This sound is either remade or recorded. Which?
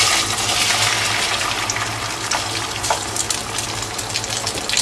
recorded